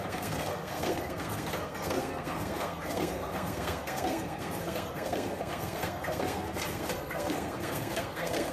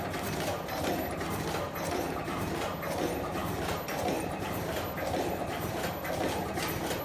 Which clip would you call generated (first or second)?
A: first